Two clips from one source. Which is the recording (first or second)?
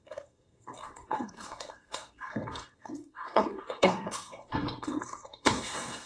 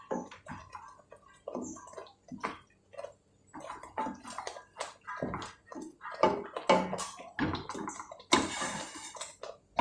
second